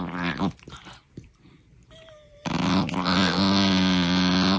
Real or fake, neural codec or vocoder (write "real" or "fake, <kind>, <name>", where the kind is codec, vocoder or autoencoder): real